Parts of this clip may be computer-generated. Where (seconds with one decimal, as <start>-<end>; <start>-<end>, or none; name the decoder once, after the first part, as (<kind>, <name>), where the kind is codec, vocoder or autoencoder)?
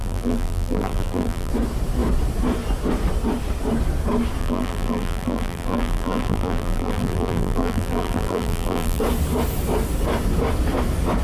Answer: 0.0-1.5 (vocoder, BigVGAN v2); 4.4-9.0